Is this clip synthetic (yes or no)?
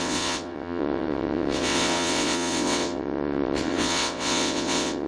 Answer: yes